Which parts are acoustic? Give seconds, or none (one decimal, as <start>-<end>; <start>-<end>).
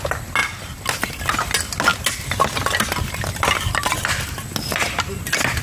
0.0-5.6